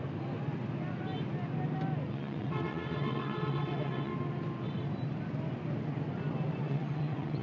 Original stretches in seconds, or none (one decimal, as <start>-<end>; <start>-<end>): 0.0-2.1; 4.1-6.6